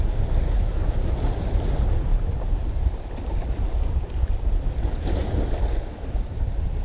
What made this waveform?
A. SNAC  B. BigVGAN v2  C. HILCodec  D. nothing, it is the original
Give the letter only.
B